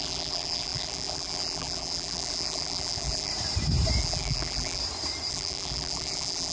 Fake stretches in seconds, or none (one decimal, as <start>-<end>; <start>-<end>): 0.0-3.3; 4.0-4.8; 5.3-6.5

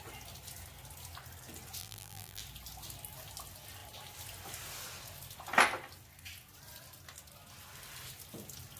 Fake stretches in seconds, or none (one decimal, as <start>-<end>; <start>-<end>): 1.8-2.4

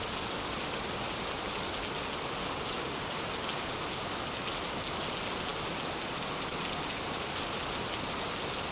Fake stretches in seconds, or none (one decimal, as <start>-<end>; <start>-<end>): none